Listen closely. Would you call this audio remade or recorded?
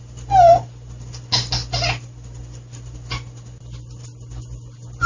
recorded